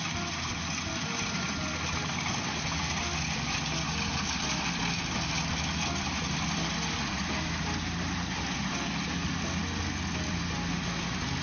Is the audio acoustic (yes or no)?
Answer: yes